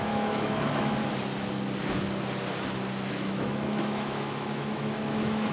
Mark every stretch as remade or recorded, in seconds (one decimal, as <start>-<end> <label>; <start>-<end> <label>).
0.0-1.0 remade; 1.0-3.1 recorded; 3.1-5.5 remade